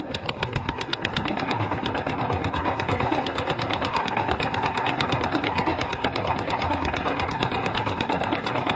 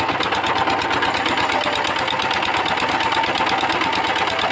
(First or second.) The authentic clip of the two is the second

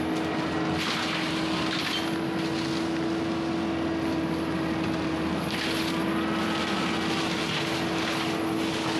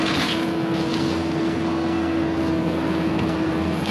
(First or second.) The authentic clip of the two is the first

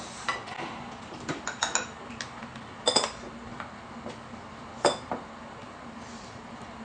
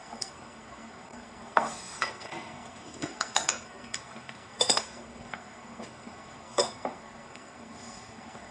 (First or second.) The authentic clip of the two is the first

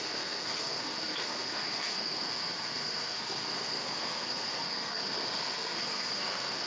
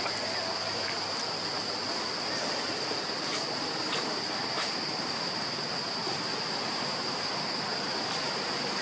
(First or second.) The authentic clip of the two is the second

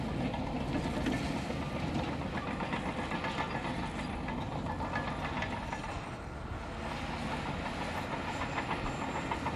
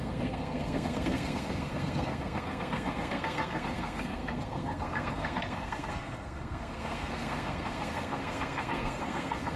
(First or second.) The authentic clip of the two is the first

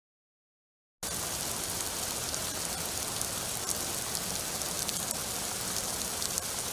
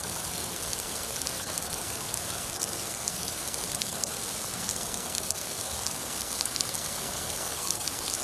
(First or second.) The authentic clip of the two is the first